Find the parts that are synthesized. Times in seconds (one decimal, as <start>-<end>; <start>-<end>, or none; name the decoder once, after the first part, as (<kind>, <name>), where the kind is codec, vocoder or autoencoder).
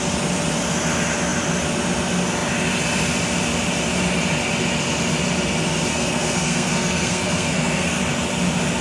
5.9-8.0 (codec, SNAC)